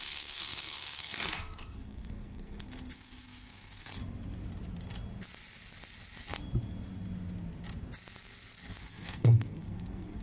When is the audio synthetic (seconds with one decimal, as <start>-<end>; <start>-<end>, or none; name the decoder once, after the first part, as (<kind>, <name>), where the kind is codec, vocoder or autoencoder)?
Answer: 0.0-4.0 (codec, SNAC); 8.8-10.2